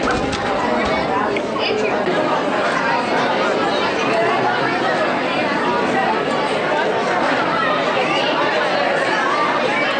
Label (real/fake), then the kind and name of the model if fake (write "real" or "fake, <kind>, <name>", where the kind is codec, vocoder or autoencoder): real